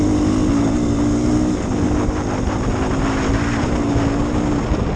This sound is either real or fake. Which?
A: real